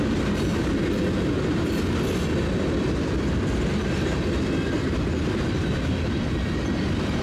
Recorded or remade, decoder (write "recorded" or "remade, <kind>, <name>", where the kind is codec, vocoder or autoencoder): recorded